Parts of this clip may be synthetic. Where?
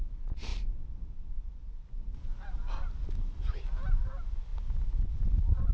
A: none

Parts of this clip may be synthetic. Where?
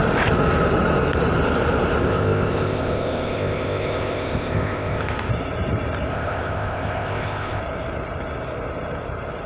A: 2.0-5.3 (codec, ZipCodec); 6.1-7.6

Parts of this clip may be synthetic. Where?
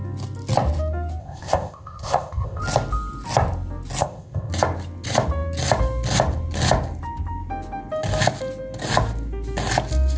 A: 1.2-2.6 (codec, ZipCodec); 4.0-4.5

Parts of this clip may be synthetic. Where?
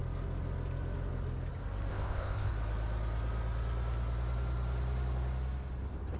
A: 1.9-2.5 (codec, ZipCodec)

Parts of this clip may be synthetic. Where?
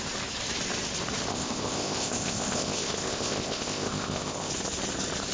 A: 1.3-4.5 (codec, ZipCodec)